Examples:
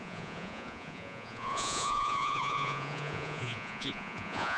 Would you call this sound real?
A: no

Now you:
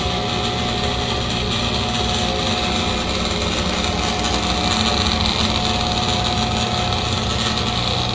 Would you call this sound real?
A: yes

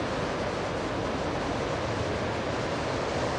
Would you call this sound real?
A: yes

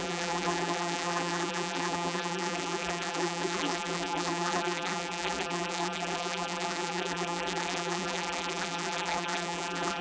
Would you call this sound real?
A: no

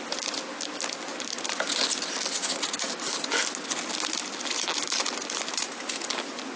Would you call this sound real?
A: yes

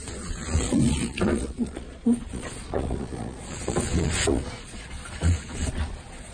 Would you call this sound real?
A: no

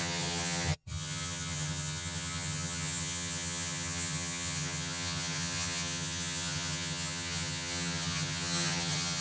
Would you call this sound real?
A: no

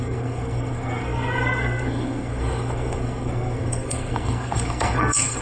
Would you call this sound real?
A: no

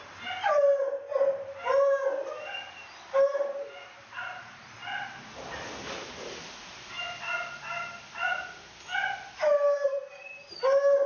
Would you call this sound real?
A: yes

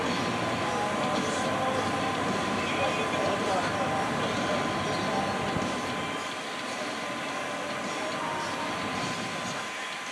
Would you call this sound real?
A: yes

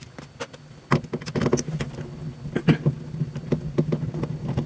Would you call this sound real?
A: yes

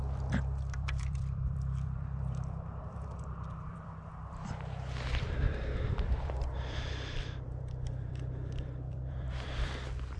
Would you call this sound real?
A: no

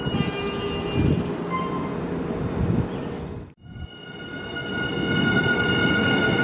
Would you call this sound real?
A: yes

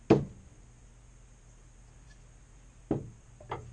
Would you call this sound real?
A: yes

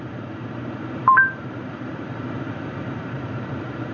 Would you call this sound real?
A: no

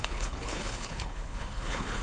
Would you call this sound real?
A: no